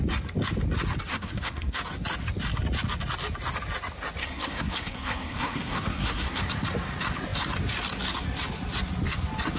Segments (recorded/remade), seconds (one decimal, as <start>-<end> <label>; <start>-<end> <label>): 0.0-1.1 recorded; 1.1-1.8 remade; 1.8-4.2 recorded; 4.2-6.4 remade; 6.4-9.6 recorded